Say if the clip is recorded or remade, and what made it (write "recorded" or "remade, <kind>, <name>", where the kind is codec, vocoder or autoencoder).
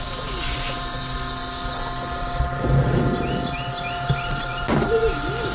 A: recorded